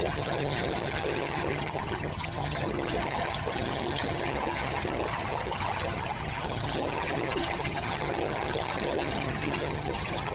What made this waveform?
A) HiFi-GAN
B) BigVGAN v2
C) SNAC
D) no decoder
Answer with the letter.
A